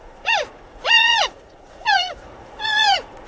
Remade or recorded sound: remade